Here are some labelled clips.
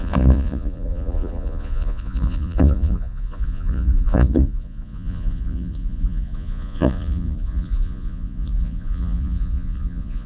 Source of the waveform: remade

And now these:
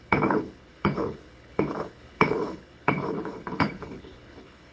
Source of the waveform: remade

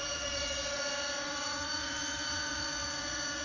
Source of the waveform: remade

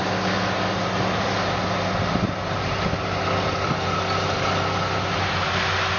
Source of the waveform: recorded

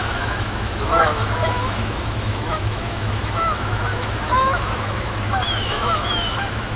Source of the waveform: remade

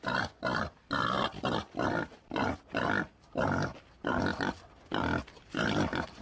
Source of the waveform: recorded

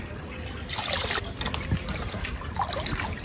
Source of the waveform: recorded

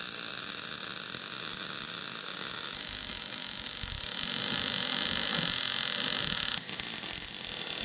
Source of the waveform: recorded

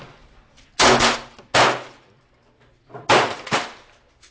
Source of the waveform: recorded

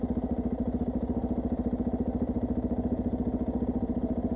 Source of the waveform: recorded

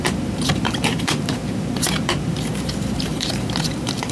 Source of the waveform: remade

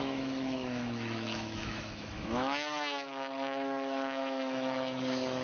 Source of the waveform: remade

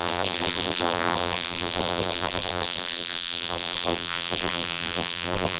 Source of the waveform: remade